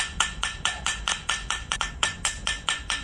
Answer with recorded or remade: remade